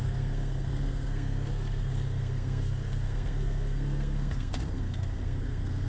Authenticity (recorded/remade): remade